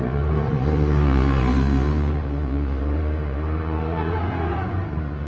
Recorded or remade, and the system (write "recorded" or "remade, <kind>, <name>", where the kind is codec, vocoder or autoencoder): remade, vocoder, Vocos